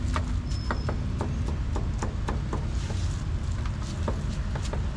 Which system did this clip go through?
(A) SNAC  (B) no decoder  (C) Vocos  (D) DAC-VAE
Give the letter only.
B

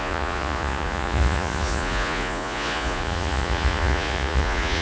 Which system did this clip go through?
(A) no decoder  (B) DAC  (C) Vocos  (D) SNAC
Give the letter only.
C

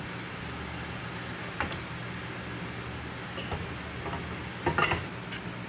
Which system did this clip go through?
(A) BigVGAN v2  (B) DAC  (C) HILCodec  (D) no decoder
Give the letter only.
D